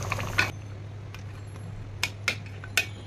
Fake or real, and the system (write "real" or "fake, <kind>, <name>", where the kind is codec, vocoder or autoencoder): real